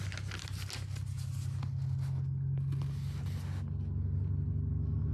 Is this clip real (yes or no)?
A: yes